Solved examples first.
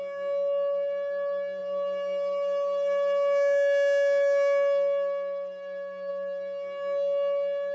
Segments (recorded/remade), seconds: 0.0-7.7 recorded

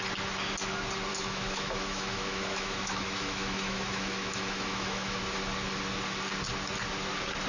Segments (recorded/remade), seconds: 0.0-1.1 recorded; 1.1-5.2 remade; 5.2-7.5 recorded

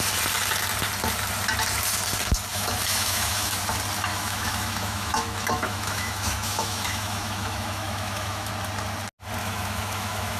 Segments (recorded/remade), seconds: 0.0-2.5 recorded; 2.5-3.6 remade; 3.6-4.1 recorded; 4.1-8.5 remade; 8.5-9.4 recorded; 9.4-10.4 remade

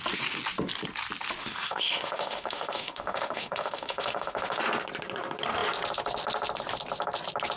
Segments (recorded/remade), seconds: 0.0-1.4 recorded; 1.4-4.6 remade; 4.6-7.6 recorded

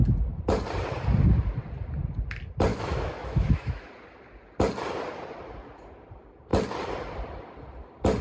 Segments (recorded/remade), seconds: 0.0-2.7 recorded; 2.7-3.9 remade; 3.9-8.2 recorded

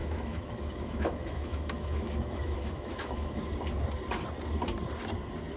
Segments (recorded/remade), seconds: 0.0-3.4 remade; 3.4-5.6 recorded

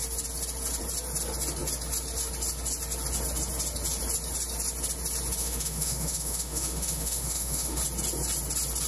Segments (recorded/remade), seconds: 0.0-5.4 recorded; 5.4-7.8 remade; 7.8-8.9 recorded